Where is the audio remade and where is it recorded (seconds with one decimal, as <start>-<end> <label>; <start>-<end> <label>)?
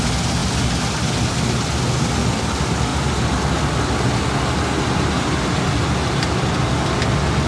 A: 0.0-7.5 recorded